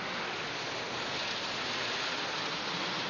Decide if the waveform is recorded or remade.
recorded